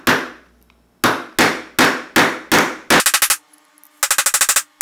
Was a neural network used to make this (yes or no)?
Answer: no